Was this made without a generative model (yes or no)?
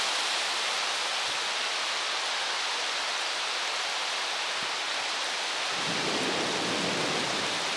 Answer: yes